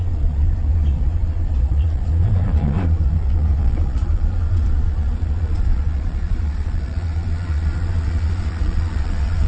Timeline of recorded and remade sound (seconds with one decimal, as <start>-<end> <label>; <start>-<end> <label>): 0.0-9.5 remade